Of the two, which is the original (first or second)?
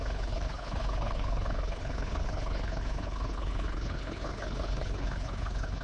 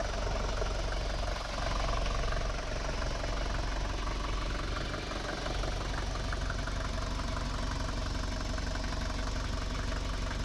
second